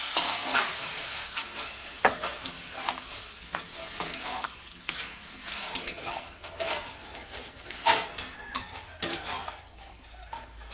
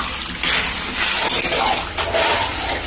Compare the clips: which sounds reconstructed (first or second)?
first